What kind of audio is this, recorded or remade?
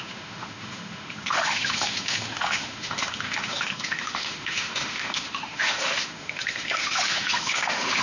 remade